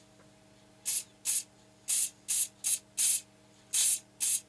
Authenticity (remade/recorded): recorded